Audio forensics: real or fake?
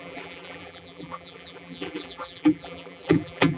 fake